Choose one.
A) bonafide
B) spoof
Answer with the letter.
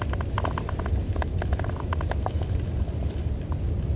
A